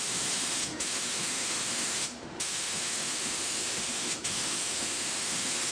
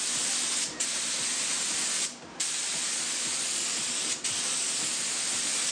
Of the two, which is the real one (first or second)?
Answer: second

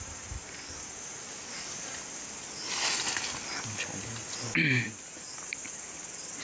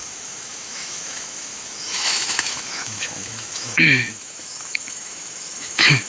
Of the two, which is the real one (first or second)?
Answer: first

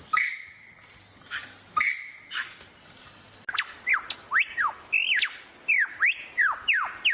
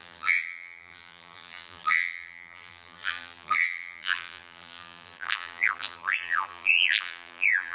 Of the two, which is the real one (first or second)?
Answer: first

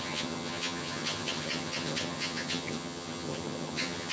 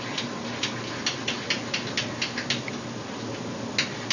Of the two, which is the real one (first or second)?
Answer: second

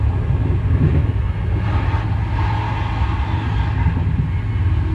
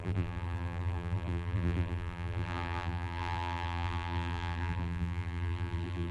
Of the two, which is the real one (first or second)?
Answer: first